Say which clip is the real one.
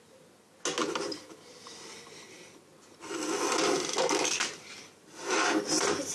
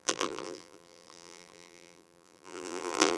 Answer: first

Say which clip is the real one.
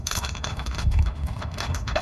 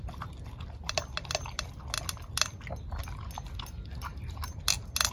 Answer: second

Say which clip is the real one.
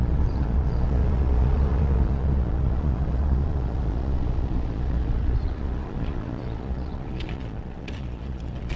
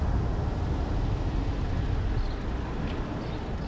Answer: second